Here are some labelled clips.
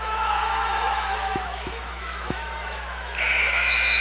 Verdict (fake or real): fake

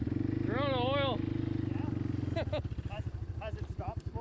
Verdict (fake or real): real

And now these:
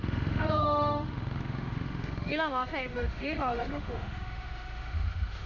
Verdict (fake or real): fake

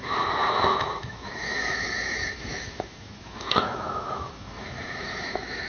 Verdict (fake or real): fake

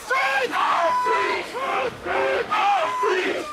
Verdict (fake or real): fake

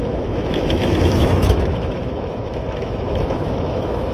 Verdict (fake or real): fake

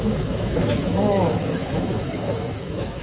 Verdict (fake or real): fake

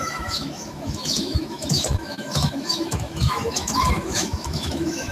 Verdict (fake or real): fake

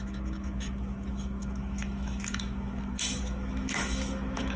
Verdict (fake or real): fake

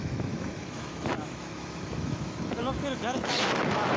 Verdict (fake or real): fake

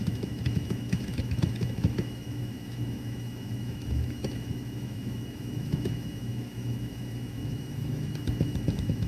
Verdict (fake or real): fake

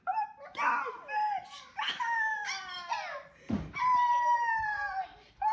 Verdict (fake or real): real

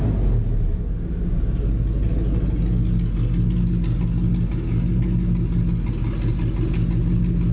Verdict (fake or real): real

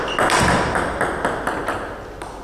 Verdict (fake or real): real